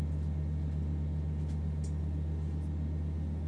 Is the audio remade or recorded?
recorded